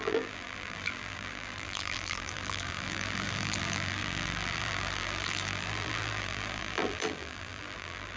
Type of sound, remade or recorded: remade